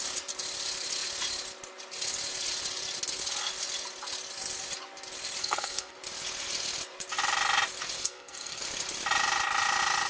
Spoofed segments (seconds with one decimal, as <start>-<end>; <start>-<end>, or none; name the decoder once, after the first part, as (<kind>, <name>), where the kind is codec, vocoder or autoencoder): 5.4-6.0 (codec, SNAC); 8.0-8.6